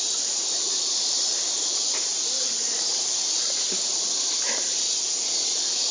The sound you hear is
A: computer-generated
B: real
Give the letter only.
A